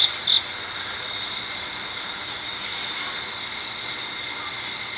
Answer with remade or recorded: recorded